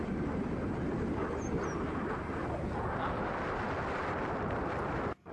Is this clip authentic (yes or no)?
yes